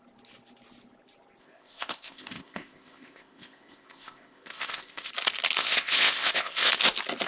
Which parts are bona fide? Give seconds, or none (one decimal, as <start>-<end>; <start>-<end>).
0.0-1.4; 5.1-5.6; 6.7-7.3